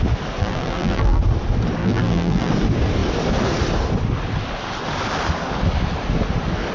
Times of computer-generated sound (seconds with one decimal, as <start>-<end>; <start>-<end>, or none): 0.4-1.2; 1.8-2.5